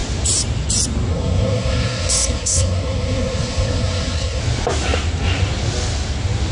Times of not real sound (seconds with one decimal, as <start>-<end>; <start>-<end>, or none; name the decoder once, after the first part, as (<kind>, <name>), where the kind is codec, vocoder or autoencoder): 1.1-4.4 (codec, SNAC)

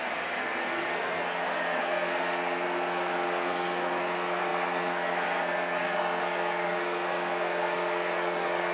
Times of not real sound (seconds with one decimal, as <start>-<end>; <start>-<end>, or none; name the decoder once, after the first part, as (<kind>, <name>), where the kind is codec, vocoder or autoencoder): 0.0-8.7 (codec, SNAC)

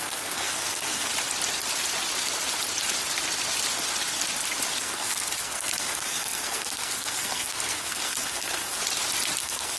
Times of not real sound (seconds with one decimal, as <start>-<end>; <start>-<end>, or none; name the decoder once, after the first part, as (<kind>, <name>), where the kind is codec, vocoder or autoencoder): 0.0-1.1 (codec, SNAC); 4.8-8.8; 9.4-9.8

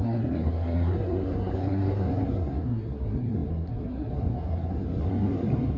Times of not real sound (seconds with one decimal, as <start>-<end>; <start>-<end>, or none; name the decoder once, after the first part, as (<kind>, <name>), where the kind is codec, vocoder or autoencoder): 0.0-5.8 (codec, SNAC)